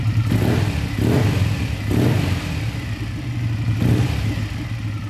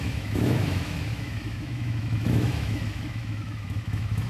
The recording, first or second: first